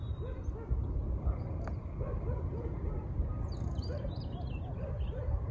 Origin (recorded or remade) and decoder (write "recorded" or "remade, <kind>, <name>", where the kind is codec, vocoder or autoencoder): recorded